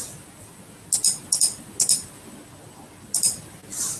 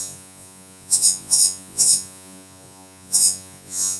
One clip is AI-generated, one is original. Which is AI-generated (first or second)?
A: second